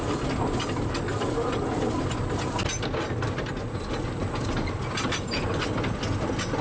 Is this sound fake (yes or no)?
no